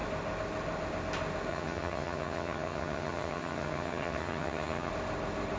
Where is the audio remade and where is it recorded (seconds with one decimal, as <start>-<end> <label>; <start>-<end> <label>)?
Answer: 0.0-1.5 recorded; 1.5-4.9 remade; 4.9-5.6 recorded